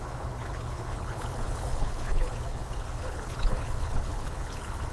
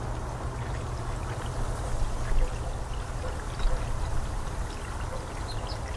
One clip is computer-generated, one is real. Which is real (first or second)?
second